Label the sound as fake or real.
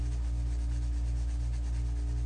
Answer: real